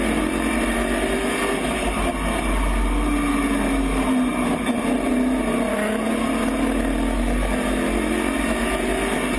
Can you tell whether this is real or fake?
real